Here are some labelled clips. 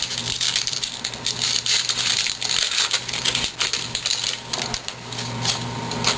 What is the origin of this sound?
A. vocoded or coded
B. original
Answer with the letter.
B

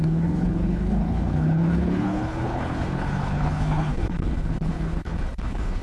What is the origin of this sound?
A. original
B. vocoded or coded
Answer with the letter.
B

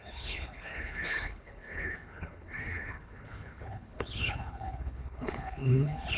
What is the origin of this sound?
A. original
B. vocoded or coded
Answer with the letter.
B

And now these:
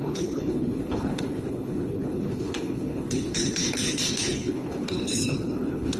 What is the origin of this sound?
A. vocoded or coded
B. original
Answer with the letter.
A